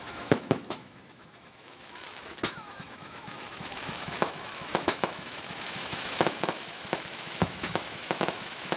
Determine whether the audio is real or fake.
fake